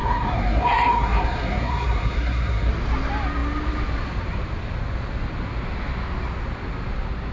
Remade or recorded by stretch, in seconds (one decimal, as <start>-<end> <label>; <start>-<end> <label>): 0.0-2.7 remade; 2.7-7.3 recorded